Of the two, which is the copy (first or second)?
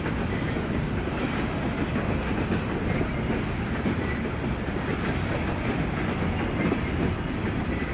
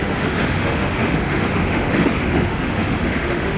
second